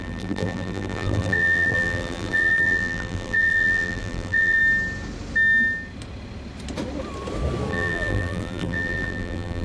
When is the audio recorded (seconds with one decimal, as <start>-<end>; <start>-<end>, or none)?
4.6-7.7